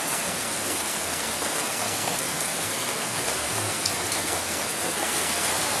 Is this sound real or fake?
fake